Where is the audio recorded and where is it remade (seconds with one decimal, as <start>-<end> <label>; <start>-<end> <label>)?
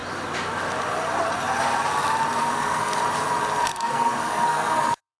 0.0-2.4 recorded; 2.4-3.0 remade; 3.0-3.6 recorded; 3.6-5.2 remade